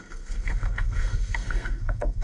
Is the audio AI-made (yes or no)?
yes